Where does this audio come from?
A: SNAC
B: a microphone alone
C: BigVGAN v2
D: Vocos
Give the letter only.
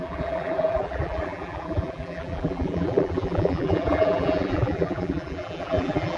C